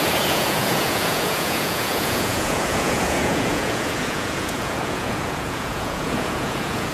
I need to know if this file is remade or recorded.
remade